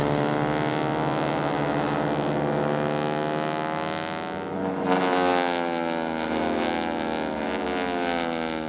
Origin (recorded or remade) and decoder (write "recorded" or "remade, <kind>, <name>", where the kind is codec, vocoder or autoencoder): recorded